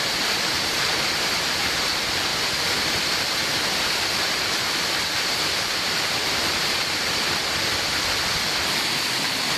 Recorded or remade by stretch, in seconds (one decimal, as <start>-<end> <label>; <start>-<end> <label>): 0.0-2.3 remade; 2.3-2.8 recorded; 2.8-7.4 remade; 7.4-9.2 recorded; 9.2-9.6 remade